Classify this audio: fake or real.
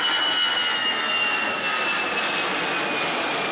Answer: real